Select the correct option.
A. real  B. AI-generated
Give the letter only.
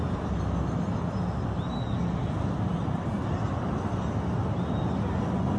A